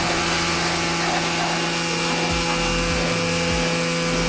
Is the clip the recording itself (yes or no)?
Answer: yes